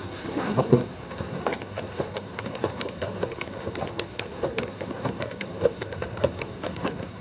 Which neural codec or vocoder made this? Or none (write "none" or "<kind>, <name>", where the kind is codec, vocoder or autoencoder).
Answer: codec, SNAC